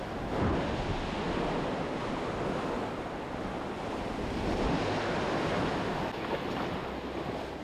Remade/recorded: recorded